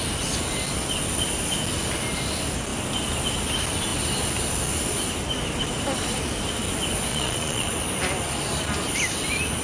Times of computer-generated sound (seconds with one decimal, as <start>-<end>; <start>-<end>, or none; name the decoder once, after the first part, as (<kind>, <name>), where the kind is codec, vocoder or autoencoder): 7.1-7.7 (vocoder, Vocos)